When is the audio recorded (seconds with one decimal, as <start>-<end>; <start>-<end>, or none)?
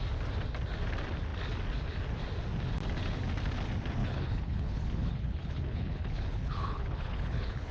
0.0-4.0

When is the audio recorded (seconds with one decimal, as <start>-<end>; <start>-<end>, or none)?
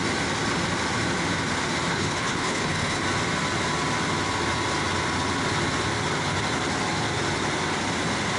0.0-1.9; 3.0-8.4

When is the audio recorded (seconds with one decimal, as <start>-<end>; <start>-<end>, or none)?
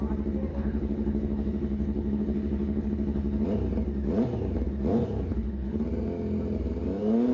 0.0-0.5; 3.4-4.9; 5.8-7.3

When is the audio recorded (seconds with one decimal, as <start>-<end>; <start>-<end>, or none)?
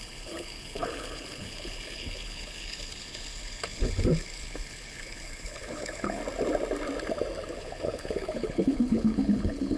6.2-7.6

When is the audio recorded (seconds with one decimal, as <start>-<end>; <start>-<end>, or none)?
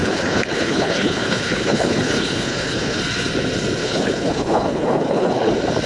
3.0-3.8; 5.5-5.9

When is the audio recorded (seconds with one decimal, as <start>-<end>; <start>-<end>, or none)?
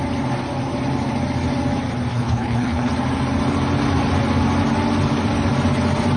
0.0-2.1; 2.9-6.2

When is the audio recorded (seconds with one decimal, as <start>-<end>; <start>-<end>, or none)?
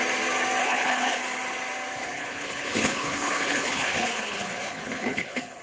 0.0-0.6; 1.2-2.0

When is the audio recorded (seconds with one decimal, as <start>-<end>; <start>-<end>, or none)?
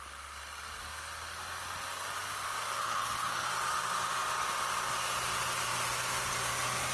0.0-2.8; 3.5-6.9